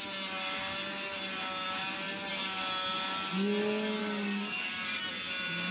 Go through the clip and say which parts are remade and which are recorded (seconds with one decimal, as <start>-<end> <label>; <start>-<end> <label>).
0.0-4.0 recorded; 4.0-5.1 remade; 5.1-5.7 recorded